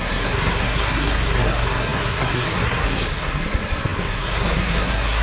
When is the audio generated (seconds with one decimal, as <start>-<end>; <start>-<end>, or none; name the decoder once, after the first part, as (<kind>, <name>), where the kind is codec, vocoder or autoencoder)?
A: 0.0-5.2 (codec, SNAC)